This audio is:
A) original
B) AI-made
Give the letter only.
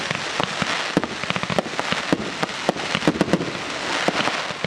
A